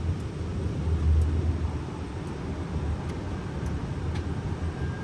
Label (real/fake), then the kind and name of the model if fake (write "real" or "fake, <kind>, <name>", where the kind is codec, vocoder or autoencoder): real